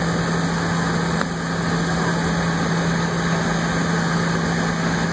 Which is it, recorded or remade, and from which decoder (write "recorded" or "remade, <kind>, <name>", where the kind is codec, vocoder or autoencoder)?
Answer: recorded